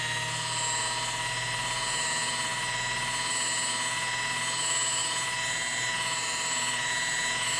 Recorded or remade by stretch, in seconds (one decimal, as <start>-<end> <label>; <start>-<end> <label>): 0.0-7.6 recorded